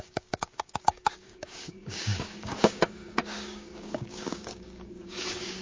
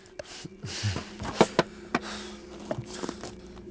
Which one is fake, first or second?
first